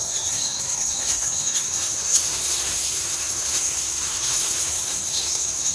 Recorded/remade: remade